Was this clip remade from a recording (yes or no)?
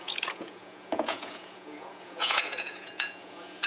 yes